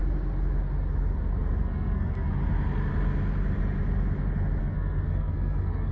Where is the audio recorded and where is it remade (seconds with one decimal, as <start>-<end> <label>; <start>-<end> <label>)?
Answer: 0.0-1.6 recorded; 1.6-2.4 remade; 2.4-4.6 recorded; 4.6-5.9 remade

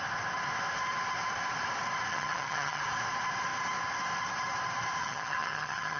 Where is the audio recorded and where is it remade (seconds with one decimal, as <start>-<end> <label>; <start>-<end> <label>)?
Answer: 0.0-2.1 recorded; 2.1-2.8 remade; 2.8-5.0 recorded; 5.0-6.0 remade